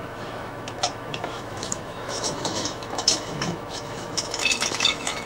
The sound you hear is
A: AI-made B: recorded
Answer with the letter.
A